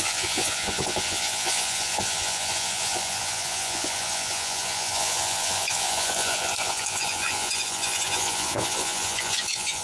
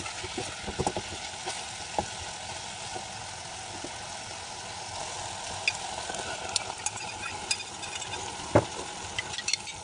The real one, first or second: second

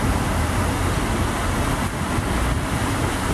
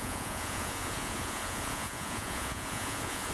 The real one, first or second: first